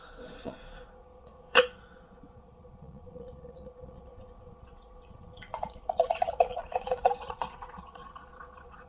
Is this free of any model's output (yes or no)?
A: no